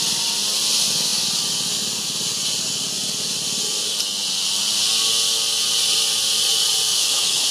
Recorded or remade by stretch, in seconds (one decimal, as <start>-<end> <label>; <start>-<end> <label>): 0.0-6.9 recorded; 6.9-7.5 remade